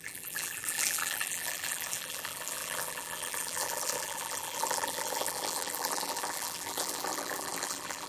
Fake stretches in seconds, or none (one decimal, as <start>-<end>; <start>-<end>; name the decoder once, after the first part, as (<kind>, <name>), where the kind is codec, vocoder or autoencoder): 0.0-8.1 (vocoder, BigVGAN v2)